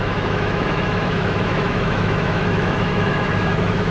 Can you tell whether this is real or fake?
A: fake